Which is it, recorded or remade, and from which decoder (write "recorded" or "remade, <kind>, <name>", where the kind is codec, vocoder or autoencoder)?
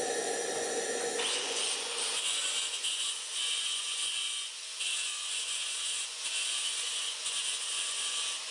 remade, vocoder, Vocos